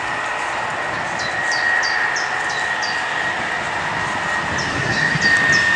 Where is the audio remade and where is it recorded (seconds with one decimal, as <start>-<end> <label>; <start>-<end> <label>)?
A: 0.0-4.7 recorded; 4.7-5.2 remade; 5.2-5.8 recorded